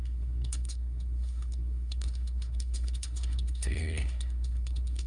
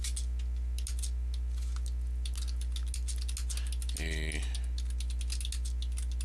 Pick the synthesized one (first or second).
first